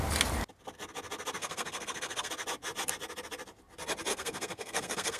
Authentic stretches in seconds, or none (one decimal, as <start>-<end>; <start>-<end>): 0.0-1.4; 2.3-4.1